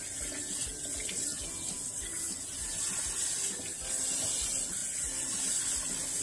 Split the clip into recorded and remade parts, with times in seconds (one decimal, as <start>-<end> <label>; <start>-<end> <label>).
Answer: 0.0-6.2 recorded

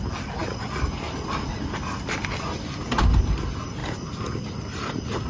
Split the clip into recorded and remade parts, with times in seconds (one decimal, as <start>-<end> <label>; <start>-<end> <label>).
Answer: 0.0-5.3 recorded